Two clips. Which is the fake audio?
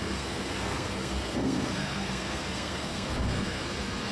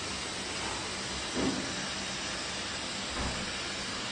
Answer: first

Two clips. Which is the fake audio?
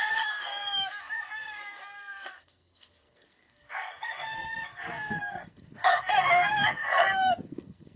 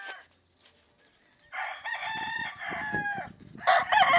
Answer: first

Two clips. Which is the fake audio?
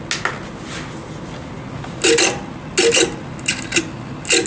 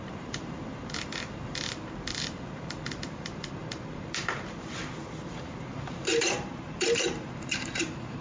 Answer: second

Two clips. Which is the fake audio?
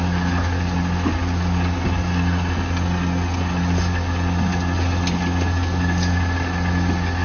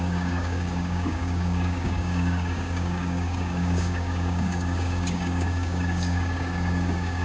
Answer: second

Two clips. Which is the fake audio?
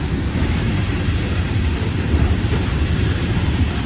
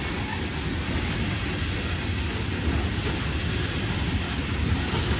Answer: first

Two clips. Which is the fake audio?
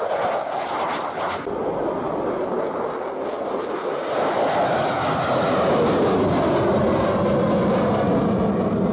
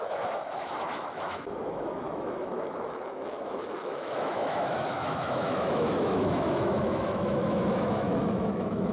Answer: second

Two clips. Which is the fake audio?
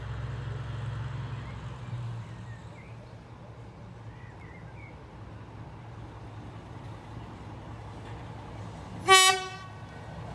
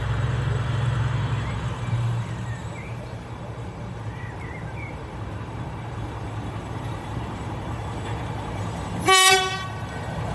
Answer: second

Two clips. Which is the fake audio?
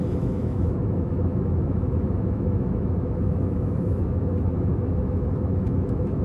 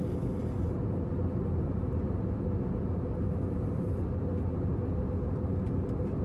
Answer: first